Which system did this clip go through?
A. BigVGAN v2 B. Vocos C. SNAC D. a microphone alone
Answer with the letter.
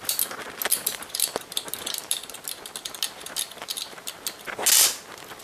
D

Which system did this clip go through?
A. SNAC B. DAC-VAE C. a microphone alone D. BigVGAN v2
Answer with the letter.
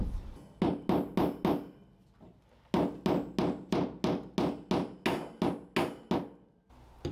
C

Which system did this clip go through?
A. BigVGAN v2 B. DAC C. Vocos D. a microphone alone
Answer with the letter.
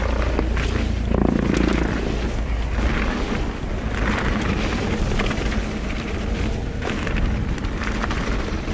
D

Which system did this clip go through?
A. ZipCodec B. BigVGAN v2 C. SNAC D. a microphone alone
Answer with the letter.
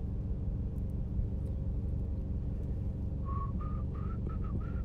D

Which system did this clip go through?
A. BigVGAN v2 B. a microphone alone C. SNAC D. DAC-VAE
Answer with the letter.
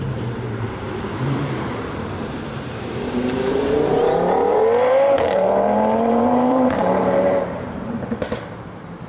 A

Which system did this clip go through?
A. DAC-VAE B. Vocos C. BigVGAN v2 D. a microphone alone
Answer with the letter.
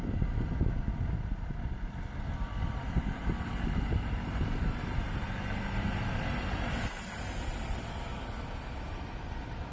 D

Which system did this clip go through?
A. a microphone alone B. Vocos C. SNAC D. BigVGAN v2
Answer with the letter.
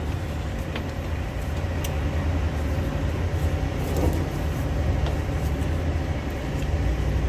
A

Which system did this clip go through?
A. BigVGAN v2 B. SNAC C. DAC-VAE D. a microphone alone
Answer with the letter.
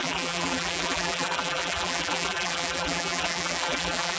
A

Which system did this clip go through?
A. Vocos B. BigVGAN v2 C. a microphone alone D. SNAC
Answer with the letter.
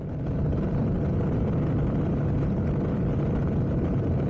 B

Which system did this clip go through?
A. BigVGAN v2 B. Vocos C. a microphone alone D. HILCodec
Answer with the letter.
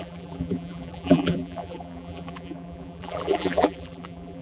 A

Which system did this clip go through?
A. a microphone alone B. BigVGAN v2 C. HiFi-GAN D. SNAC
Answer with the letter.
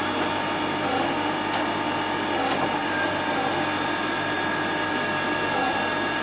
A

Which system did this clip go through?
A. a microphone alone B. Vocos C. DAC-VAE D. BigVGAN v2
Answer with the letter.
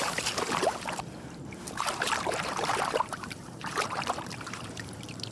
D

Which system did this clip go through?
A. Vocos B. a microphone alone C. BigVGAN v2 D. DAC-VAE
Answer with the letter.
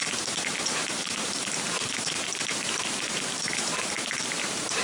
C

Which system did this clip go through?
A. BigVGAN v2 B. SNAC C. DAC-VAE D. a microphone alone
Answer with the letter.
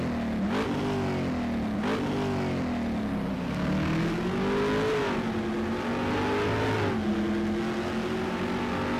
D